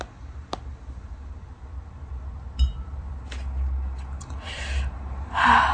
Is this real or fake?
real